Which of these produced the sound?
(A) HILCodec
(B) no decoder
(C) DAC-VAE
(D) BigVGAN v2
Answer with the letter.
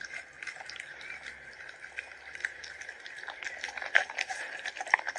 D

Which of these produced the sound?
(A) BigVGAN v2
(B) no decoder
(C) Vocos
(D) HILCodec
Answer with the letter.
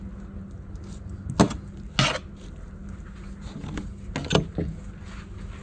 B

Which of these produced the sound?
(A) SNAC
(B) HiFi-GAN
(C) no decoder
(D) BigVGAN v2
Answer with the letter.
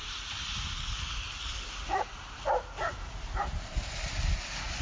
C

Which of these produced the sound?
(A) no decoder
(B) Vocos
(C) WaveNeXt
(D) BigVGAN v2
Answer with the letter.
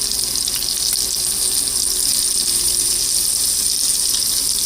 A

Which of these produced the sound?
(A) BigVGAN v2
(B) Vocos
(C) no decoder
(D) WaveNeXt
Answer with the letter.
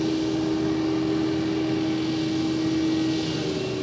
C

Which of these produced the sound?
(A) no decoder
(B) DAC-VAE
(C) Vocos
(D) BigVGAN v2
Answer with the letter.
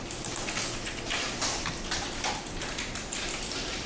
D